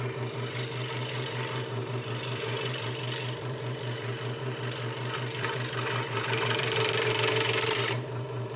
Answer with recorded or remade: remade